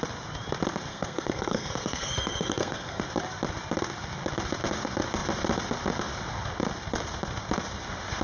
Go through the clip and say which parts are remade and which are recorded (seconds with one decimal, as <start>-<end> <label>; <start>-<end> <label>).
0.0-0.9 recorded; 0.9-3.0 remade; 3.0-8.2 recorded